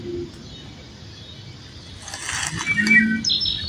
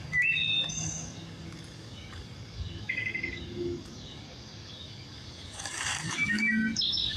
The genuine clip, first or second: first